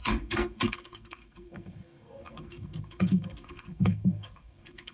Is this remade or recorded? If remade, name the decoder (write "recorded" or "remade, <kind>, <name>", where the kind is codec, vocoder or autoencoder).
remade, codec, SNAC